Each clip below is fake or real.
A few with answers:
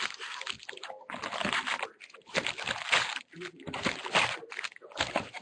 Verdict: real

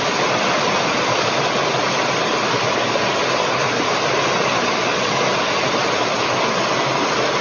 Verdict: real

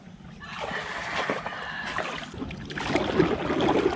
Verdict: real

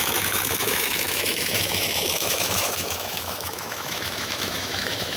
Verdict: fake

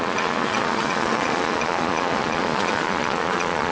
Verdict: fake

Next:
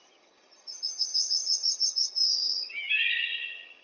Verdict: fake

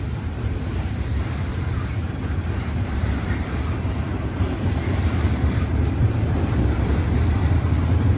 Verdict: fake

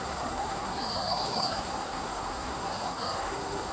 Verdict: fake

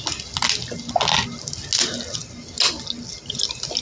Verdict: real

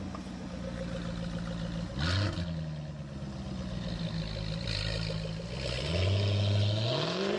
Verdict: real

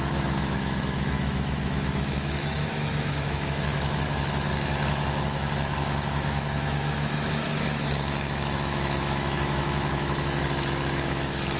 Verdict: fake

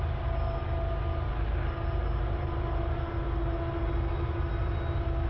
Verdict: real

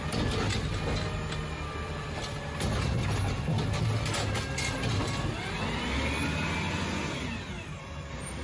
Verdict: real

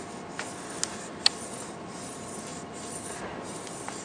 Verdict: real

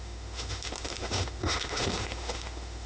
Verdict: fake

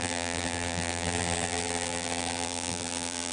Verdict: fake